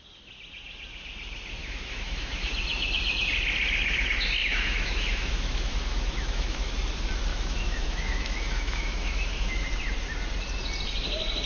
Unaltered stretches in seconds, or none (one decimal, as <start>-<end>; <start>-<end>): 0.0-1.6; 2.5-4.4; 6.7-7.3; 9.7-11.5